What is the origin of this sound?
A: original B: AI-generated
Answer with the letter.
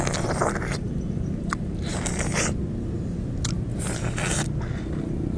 A